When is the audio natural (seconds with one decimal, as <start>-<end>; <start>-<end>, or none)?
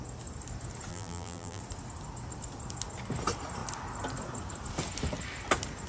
0.0-0.9; 1.6-5.9